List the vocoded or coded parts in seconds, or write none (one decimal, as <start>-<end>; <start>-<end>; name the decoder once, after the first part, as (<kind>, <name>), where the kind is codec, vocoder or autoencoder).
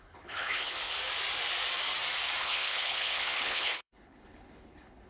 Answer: 0.0-0.9 (codec, HILCodec); 2.4-5.1